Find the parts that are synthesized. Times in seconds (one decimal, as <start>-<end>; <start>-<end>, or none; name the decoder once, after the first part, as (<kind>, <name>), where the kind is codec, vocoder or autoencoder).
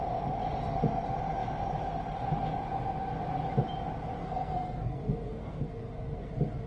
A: 4.2-6.3 (codec, SNAC)